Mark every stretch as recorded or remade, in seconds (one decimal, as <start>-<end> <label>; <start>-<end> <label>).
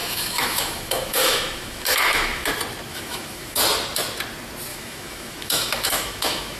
0.0-2.5 remade; 2.5-2.9 recorded; 2.9-3.6 remade; 3.6-4.7 recorded; 4.7-6.6 remade